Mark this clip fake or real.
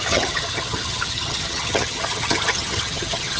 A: fake